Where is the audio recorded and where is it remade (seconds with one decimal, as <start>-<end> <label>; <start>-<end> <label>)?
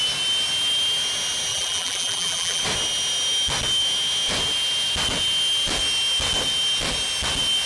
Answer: 0.0-1.5 recorded; 1.5-2.6 remade; 2.6-7.7 recorded